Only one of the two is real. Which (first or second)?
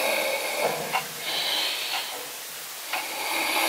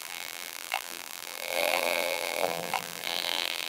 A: first